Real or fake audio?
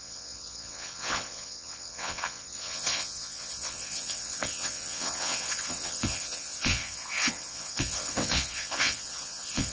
fake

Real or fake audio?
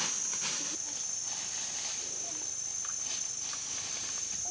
real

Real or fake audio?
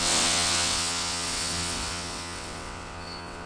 fake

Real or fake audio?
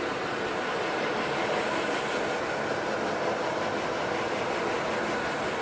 real